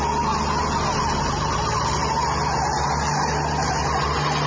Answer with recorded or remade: recorded